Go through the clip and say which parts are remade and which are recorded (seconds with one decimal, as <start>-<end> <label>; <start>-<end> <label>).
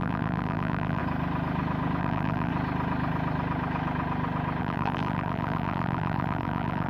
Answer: 0.0-1.0 remade; 1.0-2.0 recorded; 2.0-2.5 remade; 2.5-4.6 recorded; 4.6-6.9 remade